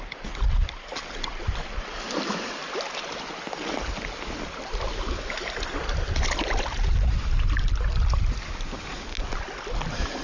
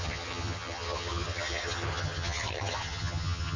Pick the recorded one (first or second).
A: first